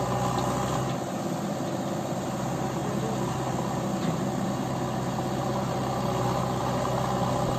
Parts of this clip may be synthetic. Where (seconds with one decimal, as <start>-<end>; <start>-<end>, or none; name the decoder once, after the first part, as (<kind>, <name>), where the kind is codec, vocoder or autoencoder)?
none